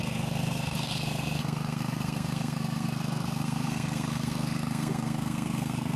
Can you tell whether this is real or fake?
fake